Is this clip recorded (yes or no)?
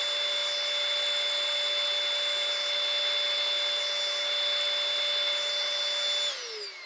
yes